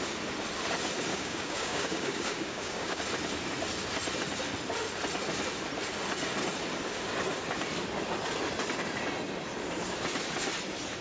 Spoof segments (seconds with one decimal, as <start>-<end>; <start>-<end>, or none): 1.1-3.0